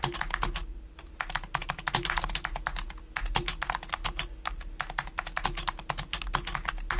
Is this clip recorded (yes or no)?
yes